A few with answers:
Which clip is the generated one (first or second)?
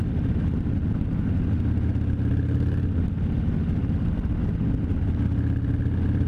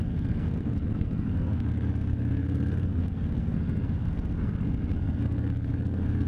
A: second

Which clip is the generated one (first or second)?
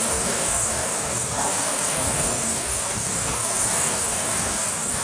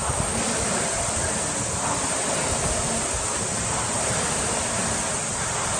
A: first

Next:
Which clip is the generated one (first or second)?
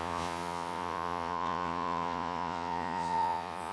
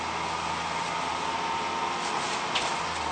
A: first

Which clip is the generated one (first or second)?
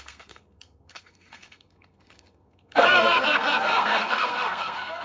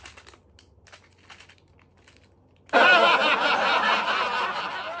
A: first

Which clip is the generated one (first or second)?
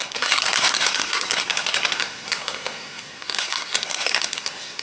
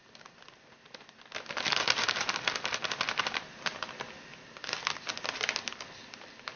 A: first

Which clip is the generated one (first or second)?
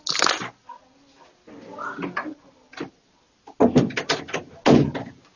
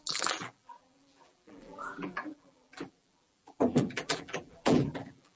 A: second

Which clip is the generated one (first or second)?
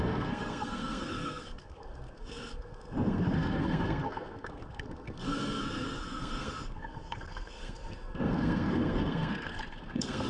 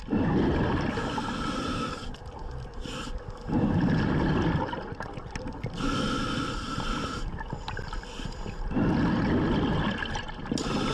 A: first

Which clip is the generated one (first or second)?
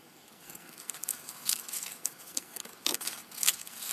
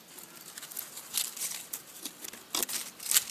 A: first